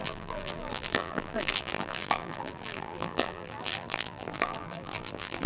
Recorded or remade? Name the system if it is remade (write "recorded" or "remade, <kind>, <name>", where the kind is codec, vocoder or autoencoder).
remade, vocoder, BigVGAN v2